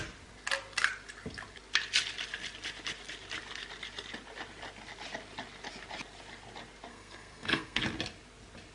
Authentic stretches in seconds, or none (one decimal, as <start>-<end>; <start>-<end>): 0.0-6.9; 7.8-8.7